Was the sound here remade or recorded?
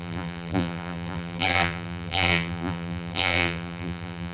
remade